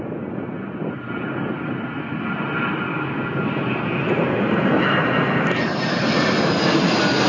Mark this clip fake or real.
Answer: real